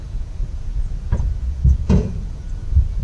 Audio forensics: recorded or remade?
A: remade